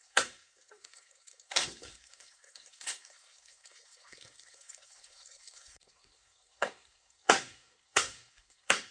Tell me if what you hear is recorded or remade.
remade